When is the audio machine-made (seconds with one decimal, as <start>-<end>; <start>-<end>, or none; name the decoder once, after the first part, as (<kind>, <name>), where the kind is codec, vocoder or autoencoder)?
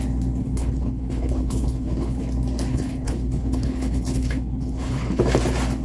0.4-2.2 (codec, HILCodec); 2.7-5.2